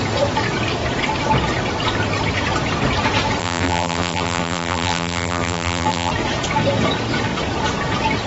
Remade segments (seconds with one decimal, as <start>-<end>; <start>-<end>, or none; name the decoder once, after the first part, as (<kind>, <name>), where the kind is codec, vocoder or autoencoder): 3.4-6.1 (vocoder, BigVGAN v2)